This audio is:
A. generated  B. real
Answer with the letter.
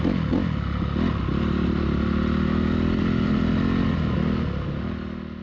B